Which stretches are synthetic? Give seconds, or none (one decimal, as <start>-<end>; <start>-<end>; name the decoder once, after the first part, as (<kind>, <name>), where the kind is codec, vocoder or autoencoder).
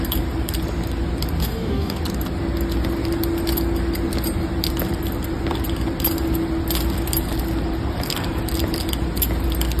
1.4-2.0 (codec, DAC)